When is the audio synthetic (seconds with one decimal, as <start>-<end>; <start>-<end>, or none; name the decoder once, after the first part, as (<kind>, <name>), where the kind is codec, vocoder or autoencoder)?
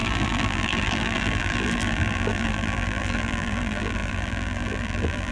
0.0-5.3 (vocoder, BigVGAN v2)